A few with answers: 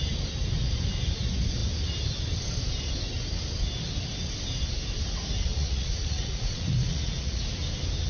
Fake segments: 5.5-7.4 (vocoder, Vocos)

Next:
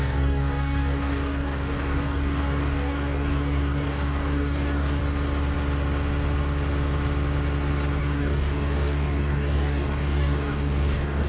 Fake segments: 0.0-5.0 (codec, DAC); 8.0-11.3